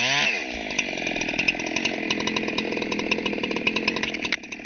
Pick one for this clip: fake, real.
real